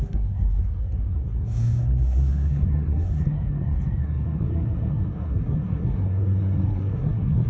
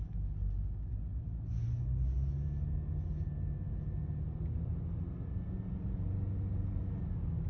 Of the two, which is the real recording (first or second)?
second